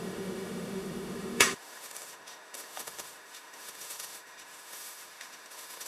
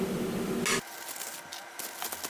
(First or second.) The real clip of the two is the second